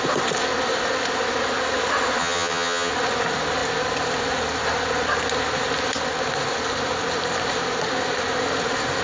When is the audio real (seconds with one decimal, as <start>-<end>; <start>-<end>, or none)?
0.0-2.2; 2.9-9.0